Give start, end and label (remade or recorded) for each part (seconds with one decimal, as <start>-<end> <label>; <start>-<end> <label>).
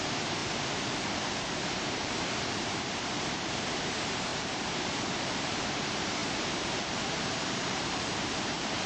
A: 0.0-8.9 remade